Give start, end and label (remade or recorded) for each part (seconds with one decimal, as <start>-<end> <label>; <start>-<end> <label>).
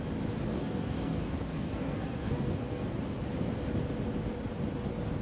0.0-0.5 recorded; 0.5-3.0 remade; 3.0-5.2 recorded